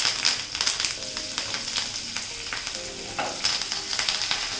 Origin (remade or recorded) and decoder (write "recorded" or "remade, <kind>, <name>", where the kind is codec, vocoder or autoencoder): recorded